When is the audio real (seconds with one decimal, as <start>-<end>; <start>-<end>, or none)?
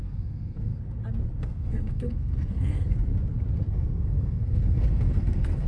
0.7-1.4; 3.1-3.7